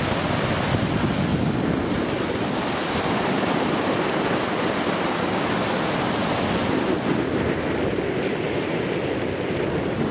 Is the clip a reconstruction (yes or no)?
no